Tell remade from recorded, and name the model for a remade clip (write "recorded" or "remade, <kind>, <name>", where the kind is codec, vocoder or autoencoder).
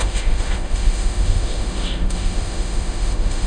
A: remade, autoencoder, DAC-VAE